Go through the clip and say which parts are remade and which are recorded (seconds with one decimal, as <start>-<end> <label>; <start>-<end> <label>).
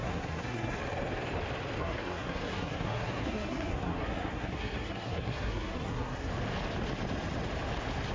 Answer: 0.0-0.8 remade; 0.8-1.8 recorded; 1.8-6.3 remade; 6.3-8.1 recorded